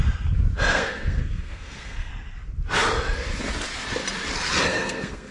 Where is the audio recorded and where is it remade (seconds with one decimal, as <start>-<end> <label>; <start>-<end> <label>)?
0.0-0.7 recorded; 0.7-2.1 remade; 2.1-4.7 recorded; 4.7-5.3 remade